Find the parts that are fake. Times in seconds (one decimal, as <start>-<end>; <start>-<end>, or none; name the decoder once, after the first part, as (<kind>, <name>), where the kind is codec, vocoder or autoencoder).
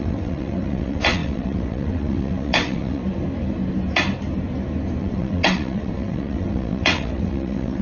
0.0-3.0 (vocoder, WaveNeXt); 5.0-7.8